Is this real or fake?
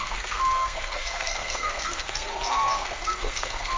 fake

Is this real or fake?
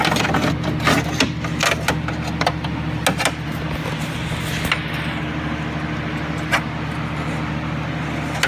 real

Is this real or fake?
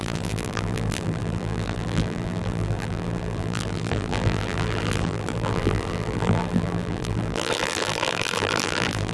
fake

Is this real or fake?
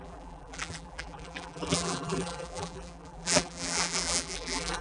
fake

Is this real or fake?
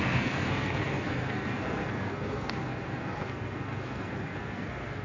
fake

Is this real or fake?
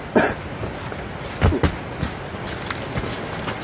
real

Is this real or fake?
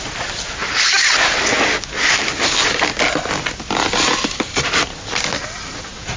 real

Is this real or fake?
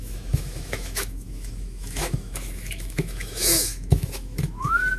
fake